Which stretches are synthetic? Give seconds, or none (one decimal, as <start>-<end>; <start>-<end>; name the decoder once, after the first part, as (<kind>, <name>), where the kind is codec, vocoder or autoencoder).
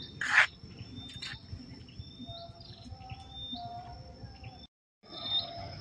none